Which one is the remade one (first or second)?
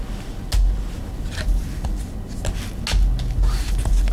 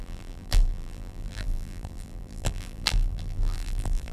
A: second